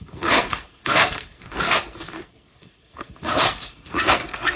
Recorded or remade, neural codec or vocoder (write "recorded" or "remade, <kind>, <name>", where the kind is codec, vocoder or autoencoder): remade, codec, SNAC